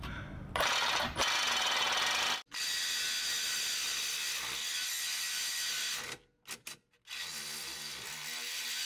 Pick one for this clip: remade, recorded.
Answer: recorded